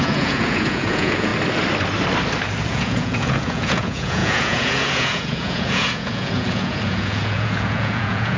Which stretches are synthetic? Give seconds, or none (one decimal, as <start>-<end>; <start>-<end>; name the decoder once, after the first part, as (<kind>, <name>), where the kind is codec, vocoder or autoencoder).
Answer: 0.0-1.3 (vocoder, Vocos); 2.7-8.4